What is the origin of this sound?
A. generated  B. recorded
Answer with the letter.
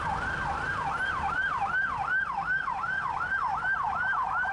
B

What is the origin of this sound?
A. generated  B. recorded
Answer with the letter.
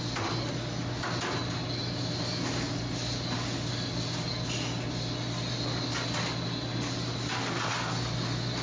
B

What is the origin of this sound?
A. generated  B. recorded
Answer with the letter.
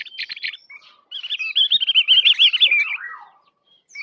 B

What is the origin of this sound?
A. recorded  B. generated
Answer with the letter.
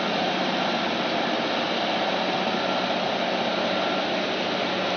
A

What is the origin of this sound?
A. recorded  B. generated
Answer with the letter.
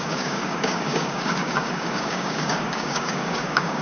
B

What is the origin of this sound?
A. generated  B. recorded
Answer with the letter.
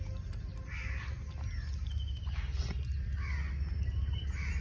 B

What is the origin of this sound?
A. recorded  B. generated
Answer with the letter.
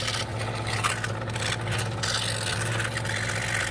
A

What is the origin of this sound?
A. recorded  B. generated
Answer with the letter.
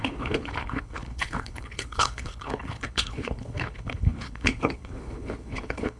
B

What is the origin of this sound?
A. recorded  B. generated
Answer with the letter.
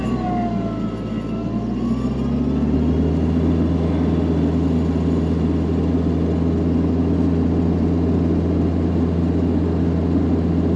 A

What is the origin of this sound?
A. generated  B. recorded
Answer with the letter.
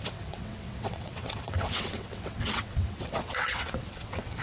A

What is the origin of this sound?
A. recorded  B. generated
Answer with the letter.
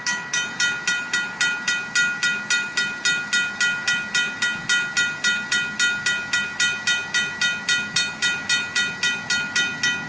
A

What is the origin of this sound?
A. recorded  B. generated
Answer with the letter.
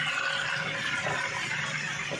A